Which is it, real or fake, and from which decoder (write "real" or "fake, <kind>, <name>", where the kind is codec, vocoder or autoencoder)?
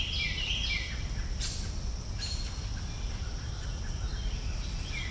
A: real